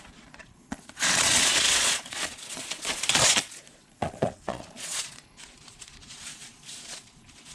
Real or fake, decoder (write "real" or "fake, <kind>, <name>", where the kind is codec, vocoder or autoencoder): fake, vocoder, Vocos